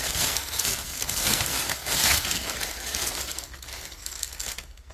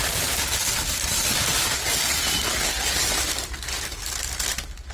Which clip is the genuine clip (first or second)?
second